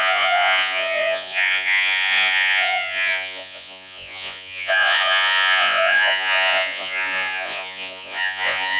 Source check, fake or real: fake